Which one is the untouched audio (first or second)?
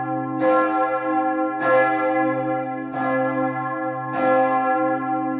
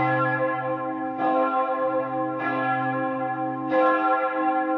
first